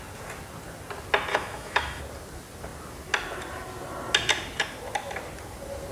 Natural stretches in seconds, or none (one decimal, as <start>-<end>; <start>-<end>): 0.0-1.3; 2.0-5.9

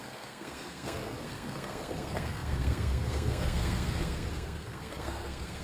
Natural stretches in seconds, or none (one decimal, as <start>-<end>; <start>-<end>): none

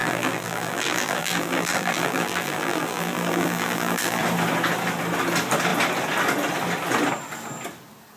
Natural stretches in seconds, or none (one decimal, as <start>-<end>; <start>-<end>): 4.2-8.2

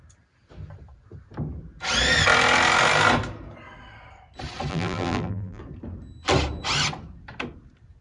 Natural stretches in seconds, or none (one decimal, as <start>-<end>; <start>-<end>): 0.0-4.7; 5.6-8.0

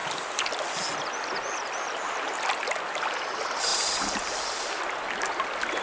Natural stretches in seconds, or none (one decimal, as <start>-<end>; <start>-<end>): 0.0-5.8

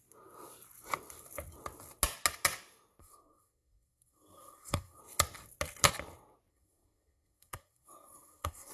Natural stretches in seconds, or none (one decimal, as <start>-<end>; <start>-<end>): 0.0-3.0; 5.0-6.5

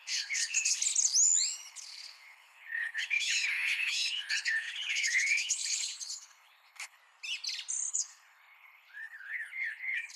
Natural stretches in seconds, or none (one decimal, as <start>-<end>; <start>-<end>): 0.8-1.7; 7.0-7.9